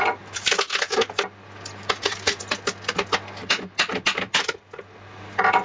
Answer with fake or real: real